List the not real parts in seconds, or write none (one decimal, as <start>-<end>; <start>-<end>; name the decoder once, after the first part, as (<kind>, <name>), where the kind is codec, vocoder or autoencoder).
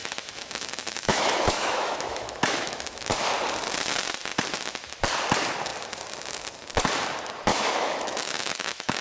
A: 0.0-3.1 (autoencoder, DAC-VAE); 7.5-9.0